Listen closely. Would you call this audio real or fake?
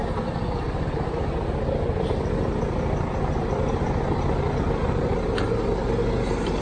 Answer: real